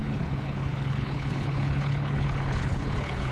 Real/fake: fake